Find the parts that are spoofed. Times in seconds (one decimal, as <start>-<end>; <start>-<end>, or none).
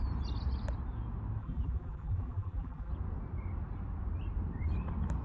1.4-2.9